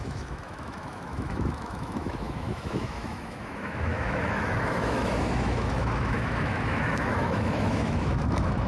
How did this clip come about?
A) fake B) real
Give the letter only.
A